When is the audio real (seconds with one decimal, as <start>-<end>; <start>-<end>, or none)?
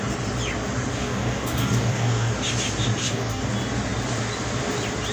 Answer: 0.0-0.9; 2.3-3.0; 3.5-5.1